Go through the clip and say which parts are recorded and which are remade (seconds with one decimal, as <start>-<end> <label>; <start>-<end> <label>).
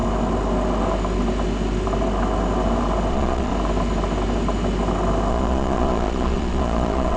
0.0-3.1 recorded; 3.1-3.5 remade; 3.5-5.3 recorded; 5.3-7.2 remade